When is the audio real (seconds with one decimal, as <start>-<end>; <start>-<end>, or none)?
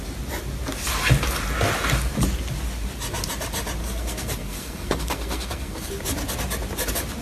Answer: 0.0-3.8; 5.9-7.2